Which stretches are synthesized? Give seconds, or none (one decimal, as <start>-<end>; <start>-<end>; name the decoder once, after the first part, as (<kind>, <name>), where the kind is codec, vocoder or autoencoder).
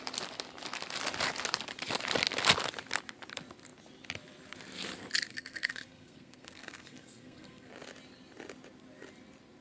5.3-7.7 (codec, SNAC)